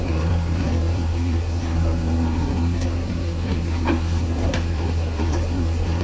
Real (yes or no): no